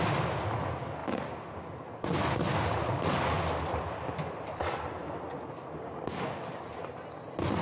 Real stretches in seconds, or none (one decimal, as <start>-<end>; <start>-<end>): 0.0-7.6